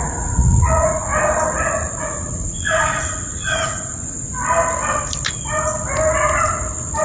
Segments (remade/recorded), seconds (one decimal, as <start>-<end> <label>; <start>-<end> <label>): 0.0-1.1 remade; 1.1-2.0 recorded; 2.0-4.3 remade; 4.3-7.0 recorded